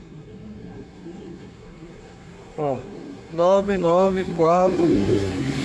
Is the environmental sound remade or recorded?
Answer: remade